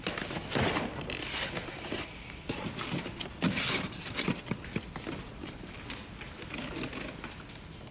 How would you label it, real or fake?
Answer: real